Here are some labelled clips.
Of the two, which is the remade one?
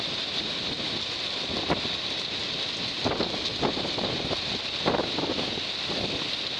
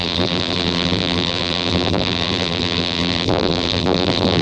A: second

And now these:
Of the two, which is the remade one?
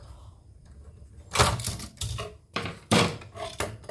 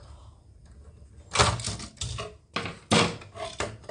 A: first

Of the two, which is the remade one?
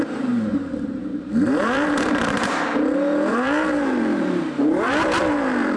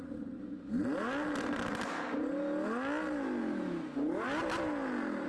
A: first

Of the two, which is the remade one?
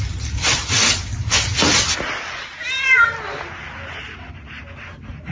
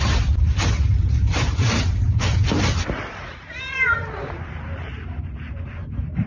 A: second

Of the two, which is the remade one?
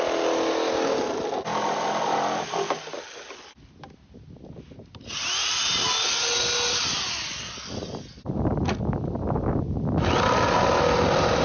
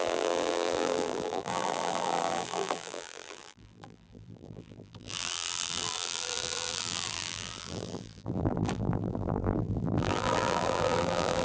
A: second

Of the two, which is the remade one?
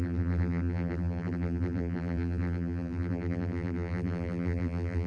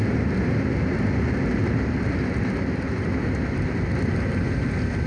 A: first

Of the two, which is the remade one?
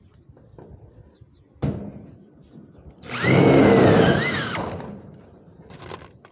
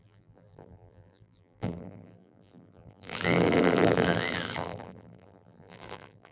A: second